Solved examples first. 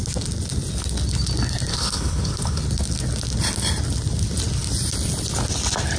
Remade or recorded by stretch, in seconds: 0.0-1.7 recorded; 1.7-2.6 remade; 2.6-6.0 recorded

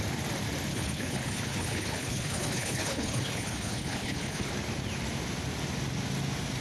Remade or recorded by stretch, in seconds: 0.0-0.7 recorded; 0.7-4.5 remade; 4.5-6.6 recorded

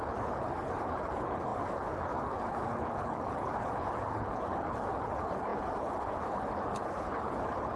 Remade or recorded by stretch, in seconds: 0.0-7.8 remade

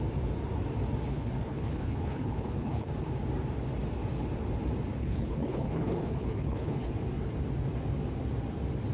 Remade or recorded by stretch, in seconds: 0.0-1.1 recorded; 1.1-2.9 remade; 2.9-5.0 recorded; 5.0-6.9 remade; 6.9-8.9 recorded

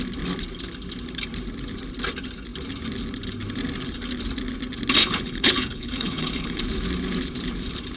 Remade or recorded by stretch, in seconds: 0.0-5.0 recorded; 5.0-6.6 remade; 6.6-8.0 recorded

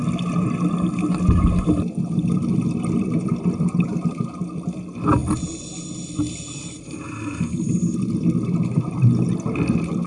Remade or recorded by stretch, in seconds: 0.0-10.1 recorded